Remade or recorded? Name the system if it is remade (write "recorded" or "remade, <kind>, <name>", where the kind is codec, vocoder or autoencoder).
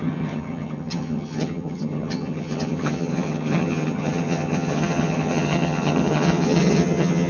remade, vocoder, HiFi-GAN